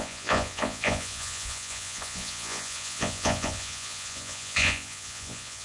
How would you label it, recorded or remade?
remade